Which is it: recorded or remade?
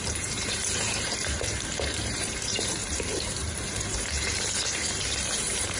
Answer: remade